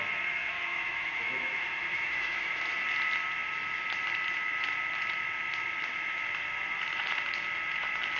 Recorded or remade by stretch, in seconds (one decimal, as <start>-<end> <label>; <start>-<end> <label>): 0.0-0.4 recorded; 0.4-2.6 remade; 2.6-8.2 recorded